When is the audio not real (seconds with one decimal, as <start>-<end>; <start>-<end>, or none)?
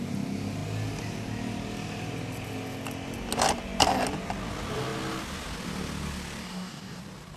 6.4-7.0